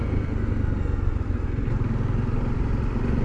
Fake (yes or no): no